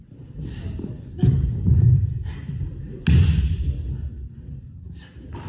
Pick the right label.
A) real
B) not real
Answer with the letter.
A